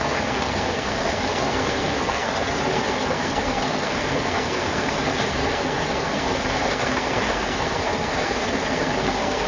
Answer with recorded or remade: remade